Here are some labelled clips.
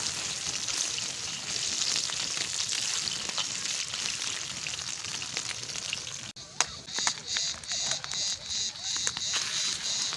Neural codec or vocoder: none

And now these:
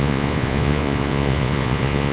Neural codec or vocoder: vocoder, Vocos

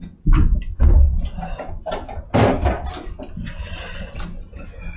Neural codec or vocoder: none